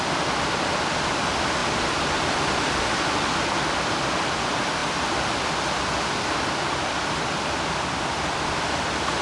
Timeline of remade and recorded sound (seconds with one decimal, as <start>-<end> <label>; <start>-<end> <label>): 0.0-9.2 recorded